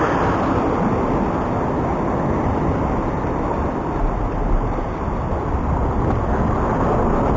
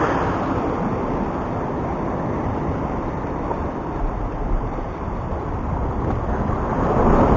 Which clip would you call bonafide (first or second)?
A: first